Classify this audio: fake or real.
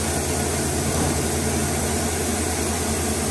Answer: real